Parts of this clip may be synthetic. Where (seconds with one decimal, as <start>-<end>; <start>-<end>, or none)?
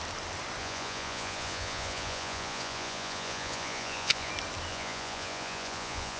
0.6-4.3; 4.7-6.2